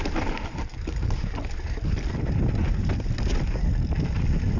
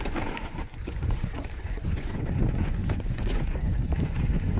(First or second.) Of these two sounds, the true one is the first